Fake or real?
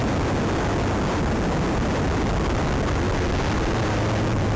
real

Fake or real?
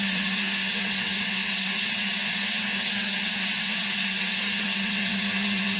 fake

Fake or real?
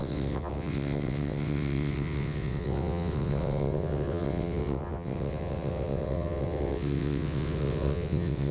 fake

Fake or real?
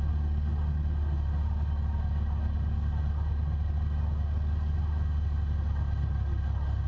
real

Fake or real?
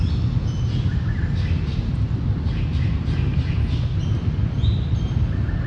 real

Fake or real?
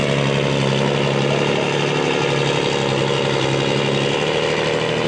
real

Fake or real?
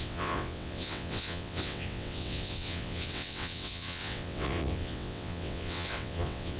fake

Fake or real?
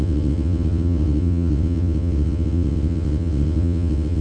fake